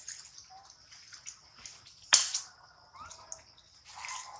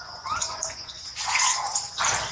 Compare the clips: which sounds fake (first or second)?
second